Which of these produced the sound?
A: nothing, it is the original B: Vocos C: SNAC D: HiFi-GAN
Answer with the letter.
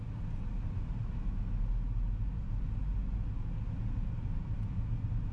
A